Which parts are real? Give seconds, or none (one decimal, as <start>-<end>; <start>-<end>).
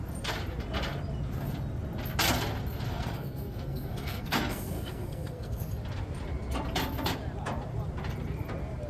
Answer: 0.0-2.9; 5.7-8.9